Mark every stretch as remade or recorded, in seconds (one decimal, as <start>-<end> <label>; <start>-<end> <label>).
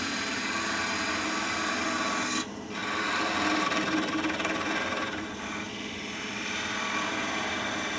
0.0-8.0 recorded